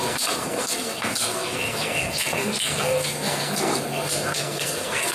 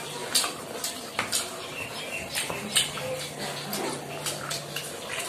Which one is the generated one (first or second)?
first